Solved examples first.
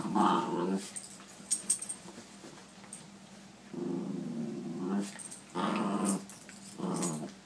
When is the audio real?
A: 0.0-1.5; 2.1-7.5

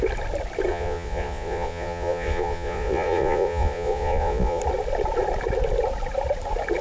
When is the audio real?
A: 0.0-0.7; 4.6-6.8

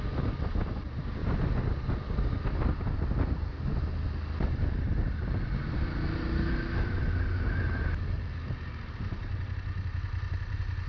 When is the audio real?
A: 0.0-10.9